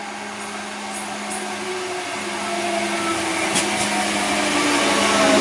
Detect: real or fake real